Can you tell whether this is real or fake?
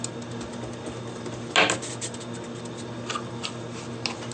real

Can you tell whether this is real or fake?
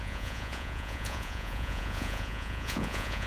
fake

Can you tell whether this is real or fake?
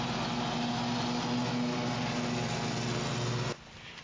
real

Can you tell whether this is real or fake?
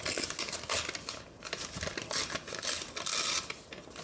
real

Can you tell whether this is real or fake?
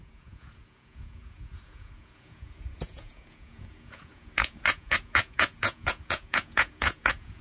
fake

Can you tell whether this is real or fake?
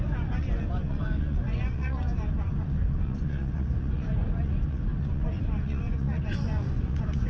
fake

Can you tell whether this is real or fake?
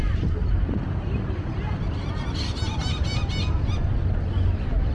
real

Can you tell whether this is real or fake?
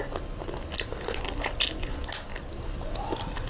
real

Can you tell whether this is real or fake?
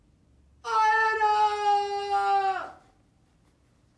real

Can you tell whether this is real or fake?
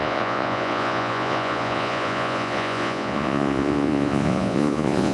fake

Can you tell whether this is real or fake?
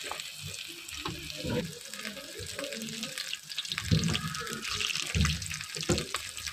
real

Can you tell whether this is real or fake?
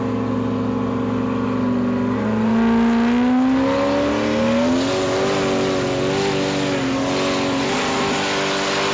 real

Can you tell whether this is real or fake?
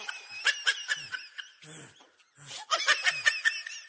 real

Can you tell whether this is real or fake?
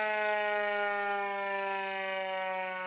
real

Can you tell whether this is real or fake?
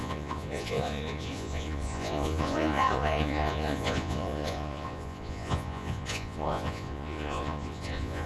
fake